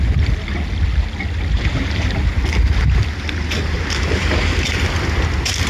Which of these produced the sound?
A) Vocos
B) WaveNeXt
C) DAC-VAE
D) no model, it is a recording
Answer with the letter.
D